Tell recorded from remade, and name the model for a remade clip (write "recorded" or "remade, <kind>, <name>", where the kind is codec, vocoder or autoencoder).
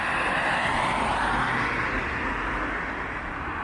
recorded